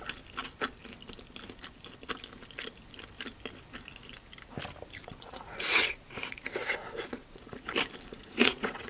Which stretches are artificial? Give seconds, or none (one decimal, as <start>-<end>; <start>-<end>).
5.0-7.7; 8.1-8.9